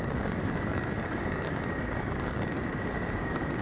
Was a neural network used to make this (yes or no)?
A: yes